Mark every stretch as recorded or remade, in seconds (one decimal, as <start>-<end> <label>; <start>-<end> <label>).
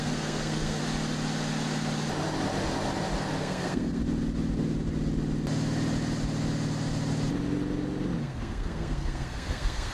0.0-0.8 remade; 0.8-3.4 recorded; 3.4-4.0 remade; 4.0-8.2 recorded; 8.2-9.9 remade